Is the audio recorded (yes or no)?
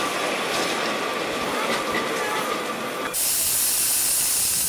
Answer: yes